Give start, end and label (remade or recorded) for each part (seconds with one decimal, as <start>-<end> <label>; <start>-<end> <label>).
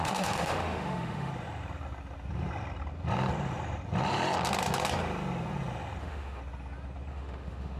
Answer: 0.0-1.3 remade; 1.3-6.0 recorded; 6.0-6.4 remade; 6.4-7.1 recorded; 7.1-7.8 remade